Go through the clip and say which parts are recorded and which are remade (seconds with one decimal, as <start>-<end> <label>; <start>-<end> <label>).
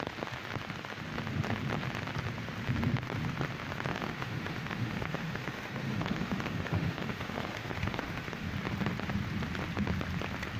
0.0-3.9 recorded; 3.9-8.5 remade; 8.5-10.6 recorded